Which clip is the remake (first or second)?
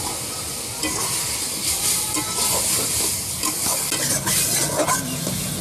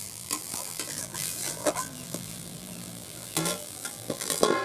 second